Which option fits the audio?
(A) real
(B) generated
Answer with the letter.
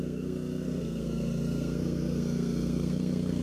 B